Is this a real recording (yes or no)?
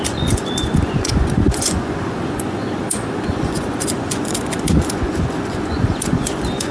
no